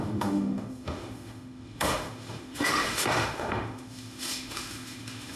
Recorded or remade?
remade